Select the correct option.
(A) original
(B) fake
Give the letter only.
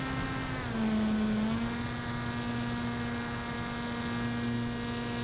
A